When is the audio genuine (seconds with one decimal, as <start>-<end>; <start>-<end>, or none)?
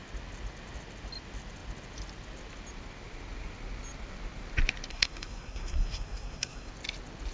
0.0-4.9; 6.7-7.3